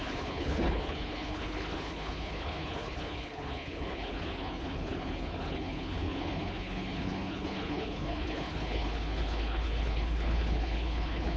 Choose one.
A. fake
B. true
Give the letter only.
A